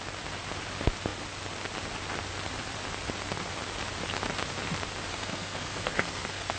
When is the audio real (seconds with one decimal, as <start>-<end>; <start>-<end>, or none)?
0.0-5.1